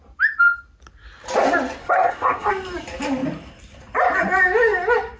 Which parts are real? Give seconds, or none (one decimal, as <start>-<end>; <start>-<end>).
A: 0.0-1.8; 2.5-5.2